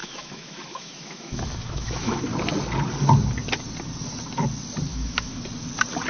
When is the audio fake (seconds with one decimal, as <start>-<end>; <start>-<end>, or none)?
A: 0.0-2.2; 4.9-5.4